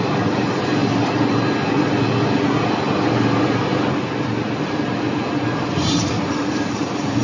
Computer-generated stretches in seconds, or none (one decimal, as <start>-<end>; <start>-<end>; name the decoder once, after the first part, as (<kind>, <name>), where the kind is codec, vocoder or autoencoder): 0.0-0.8 (vocoder, BigVGAN v2); 3.9-7.2